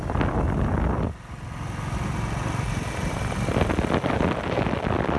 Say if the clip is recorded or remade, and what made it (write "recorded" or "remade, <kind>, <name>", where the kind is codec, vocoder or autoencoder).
recorded